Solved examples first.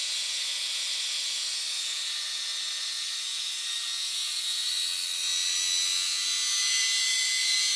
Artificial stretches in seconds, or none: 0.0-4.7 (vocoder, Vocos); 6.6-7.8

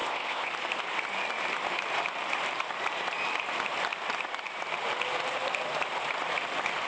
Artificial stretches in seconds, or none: 0.0-0.5 (codec, ZipCodec)

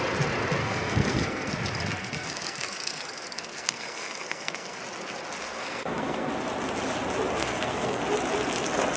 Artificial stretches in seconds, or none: 0.6-1.5 (codec, SNAC); 2.0-4.8; 5.4-6.3; 7.4-8.0

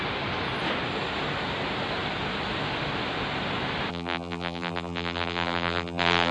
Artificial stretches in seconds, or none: 3.9-6.3 (vocoder, BigVGAN v2)

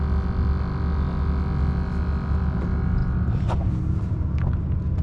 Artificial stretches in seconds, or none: none